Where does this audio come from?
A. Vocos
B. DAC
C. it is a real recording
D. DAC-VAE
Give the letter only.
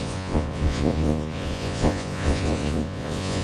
A